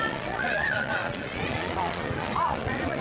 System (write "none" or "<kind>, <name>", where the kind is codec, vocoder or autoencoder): vocoder, Vocos